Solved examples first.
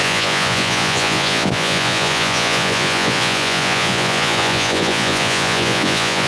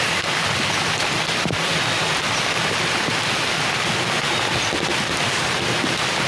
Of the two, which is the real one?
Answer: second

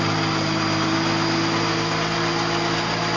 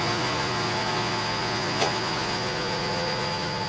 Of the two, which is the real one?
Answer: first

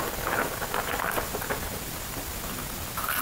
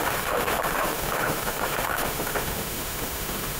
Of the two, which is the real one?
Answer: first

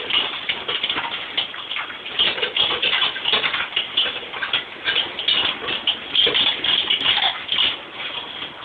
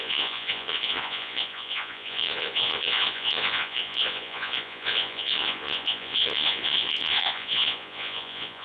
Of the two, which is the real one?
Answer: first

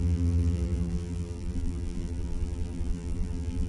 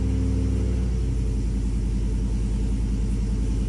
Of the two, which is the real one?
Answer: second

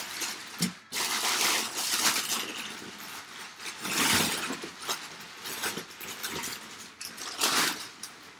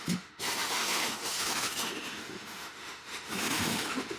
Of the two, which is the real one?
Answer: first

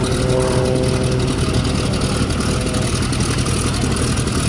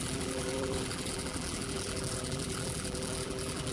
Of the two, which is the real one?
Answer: first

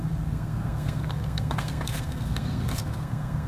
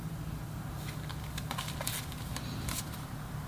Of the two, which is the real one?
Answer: second